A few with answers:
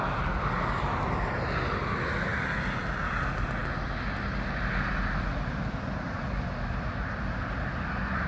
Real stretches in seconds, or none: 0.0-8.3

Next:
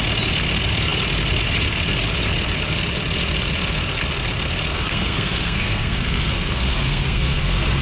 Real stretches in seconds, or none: 0.0-4.7